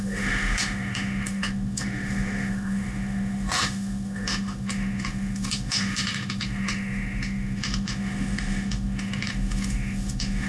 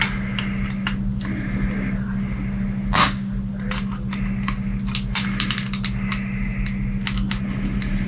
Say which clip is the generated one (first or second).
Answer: first